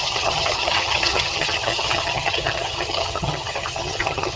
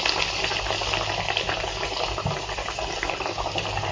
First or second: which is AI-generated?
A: first